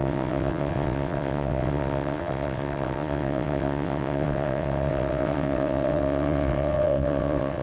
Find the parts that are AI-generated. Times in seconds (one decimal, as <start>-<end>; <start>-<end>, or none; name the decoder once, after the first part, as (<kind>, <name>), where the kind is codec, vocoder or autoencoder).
0.0-7.6 (vocoder, WaveNeXt)